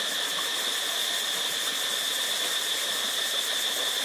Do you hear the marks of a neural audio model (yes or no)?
no